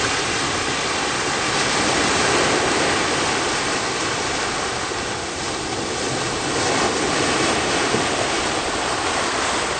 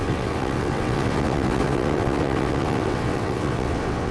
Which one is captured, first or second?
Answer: first